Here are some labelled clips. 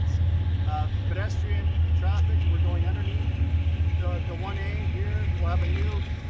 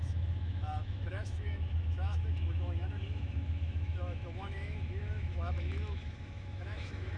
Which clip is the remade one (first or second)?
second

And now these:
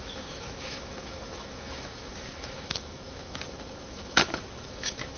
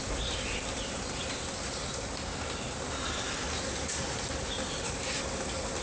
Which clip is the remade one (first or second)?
first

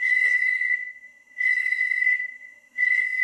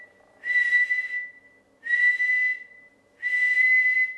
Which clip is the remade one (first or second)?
first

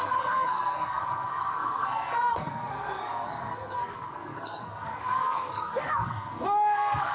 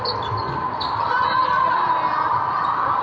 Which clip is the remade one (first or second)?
first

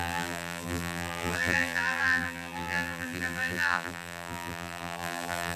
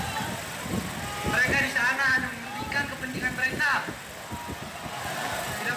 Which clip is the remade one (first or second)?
first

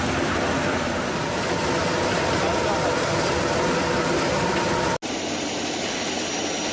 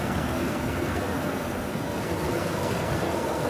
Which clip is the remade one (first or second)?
second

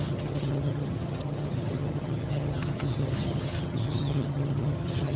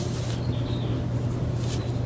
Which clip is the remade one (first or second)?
first